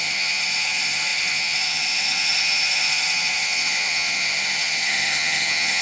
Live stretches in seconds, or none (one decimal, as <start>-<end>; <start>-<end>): none